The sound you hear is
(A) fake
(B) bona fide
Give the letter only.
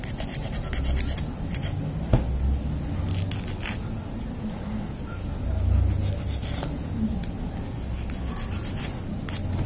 B